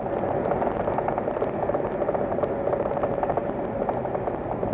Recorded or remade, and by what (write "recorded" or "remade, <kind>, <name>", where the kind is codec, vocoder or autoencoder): recorded